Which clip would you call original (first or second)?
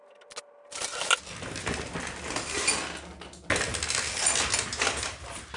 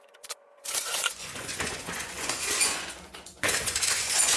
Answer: first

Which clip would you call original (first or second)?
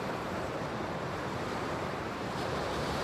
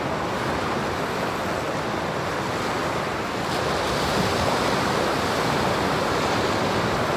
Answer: second